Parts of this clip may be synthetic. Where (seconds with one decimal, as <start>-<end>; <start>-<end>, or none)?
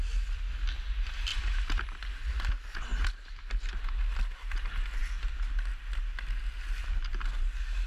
1.3-2.2; 2.9-3.4